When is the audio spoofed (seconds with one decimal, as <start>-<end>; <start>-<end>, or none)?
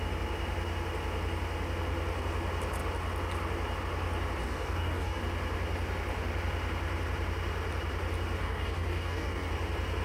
4.4-5.2; 8.4-9.5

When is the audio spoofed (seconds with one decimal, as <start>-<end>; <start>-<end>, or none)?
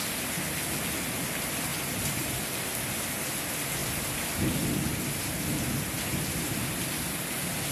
1.7-2.4; 3.8-4.9; 6.1-6.7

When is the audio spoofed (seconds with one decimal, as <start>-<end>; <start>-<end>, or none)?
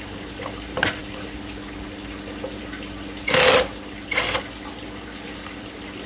none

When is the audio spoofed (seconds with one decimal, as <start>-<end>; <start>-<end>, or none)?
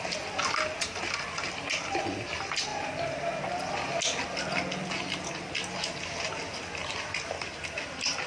none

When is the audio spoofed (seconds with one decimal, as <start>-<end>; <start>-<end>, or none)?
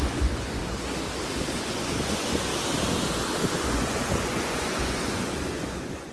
0.0-0.6; 1.6-2.5; 3.5-6.1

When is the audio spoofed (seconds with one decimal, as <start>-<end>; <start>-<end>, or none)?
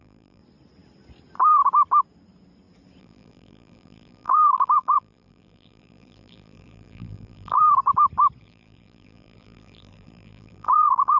0.0-0.4; 3.0-7.6; 8.4-11.2